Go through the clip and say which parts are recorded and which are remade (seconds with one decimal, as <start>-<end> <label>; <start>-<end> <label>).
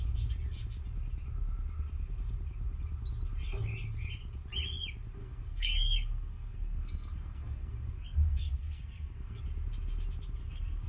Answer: 0.0-5.2 recorded; 5.2-9.4 remade; 9.4-10.4 recorded; 10.4-10.9 remade